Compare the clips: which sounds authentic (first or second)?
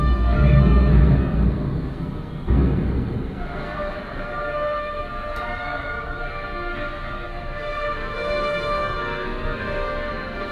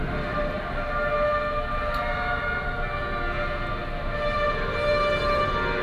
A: second